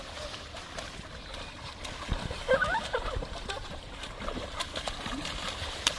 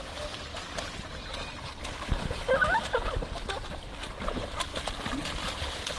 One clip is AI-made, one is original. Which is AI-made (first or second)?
first